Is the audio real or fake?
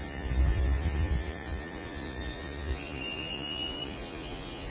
fake